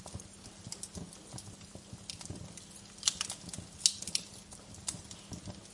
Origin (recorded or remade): recorded